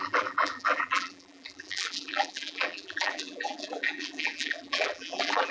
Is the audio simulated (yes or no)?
yes